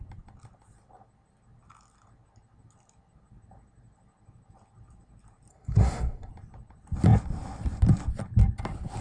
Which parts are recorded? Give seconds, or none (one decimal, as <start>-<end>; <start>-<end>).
0.0-5.5; 6.3-9.0